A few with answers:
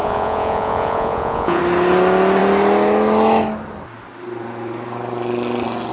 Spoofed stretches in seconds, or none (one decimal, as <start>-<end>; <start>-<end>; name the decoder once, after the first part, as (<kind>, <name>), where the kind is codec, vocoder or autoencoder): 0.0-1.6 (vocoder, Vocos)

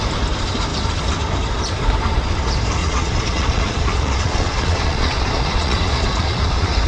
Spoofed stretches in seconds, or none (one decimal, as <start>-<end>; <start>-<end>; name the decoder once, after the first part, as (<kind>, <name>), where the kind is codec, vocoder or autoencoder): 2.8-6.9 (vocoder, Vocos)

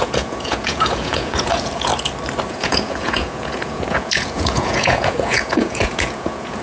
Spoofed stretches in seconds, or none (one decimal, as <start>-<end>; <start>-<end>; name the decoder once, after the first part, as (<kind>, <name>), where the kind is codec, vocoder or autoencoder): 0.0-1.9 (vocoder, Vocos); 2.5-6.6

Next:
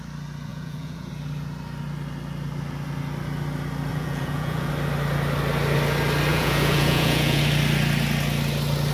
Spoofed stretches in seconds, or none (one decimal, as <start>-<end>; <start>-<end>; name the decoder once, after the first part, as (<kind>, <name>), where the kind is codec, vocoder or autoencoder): 0.5-1.1 (vocoder, Vocos); 3.9-4.7; 6.3-7.4

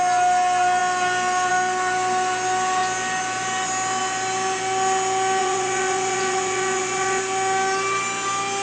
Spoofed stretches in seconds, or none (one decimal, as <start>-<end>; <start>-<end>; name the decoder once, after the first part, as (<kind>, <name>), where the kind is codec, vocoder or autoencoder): 5.4-7.2 (vocoder, Vocos)

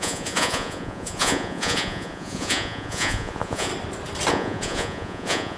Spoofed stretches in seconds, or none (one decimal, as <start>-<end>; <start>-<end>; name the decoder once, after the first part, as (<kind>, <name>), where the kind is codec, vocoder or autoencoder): 0.0-3.7 (vocoder, Vocos); 4.3-5.6

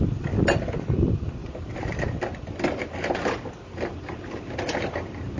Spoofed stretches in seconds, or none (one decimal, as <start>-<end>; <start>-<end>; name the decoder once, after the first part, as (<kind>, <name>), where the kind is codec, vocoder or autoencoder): none